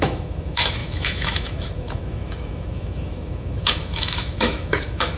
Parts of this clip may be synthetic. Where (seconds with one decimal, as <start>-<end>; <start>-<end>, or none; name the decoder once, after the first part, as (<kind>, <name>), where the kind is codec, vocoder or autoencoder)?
0.0-5.2 (autoencoder, DAC-VAE)